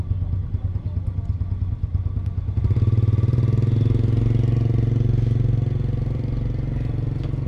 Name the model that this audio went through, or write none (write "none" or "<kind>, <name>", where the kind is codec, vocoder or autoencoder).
none